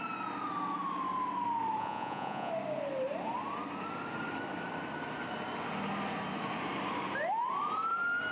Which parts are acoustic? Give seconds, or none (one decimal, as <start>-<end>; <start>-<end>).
0.0-1.8; 2.5-8.3